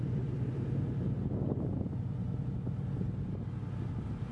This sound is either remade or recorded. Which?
recorded